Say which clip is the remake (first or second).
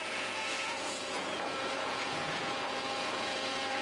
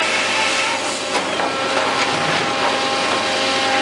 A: first